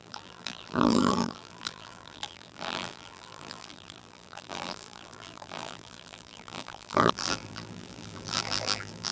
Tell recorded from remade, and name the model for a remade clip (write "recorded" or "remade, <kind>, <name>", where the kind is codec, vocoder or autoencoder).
remade, vocoder, BigVGAN v2